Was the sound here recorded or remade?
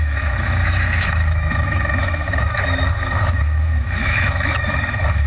remade